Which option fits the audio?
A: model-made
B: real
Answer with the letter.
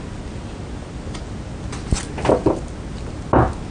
B